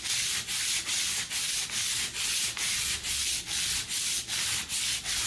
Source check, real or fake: real